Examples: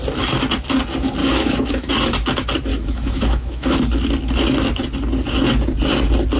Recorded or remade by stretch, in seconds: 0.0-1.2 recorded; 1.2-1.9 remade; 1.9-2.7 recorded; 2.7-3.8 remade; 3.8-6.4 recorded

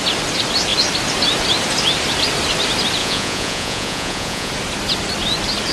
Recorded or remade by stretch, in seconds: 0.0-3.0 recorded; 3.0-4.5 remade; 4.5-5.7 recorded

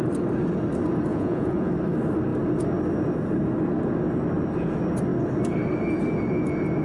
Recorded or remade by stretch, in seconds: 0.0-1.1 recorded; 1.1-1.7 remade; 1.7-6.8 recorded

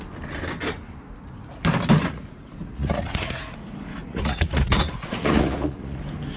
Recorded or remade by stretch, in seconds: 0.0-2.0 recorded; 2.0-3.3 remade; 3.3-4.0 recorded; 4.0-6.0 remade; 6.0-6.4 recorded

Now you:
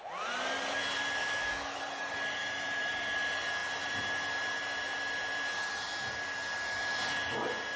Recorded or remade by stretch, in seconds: 0.0-1.2 recorded; 1.2-1.8 remade; 1.8-2.4 recorded; 2.4-2.9 remade; 2.9-7.8 recorded

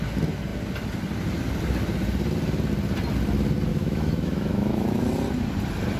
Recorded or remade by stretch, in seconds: 0.0-3.7 recorded; 3.7-5.0 remade; 5.0-6.0 recorded

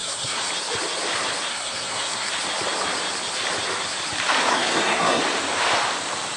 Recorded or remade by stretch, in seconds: 0.0-0.5 remade; 0.5-1.5 recorded; 1.5-2.3 remade; 2.3-4.5 recorded; 4.5-5.2 remade; 5.2-6.4 recorded

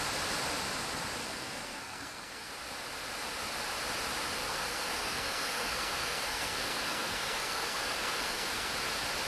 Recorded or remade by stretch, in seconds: 0.0-1.2 recorded; 1.2-2.5 remade; 2.5-4.4 recorded; 4.4-8.7 remade; 8.7-9.3 recorded